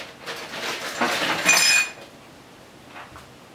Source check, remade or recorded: recorded